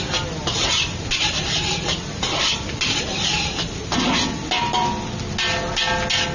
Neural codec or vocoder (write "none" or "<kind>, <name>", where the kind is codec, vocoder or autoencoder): none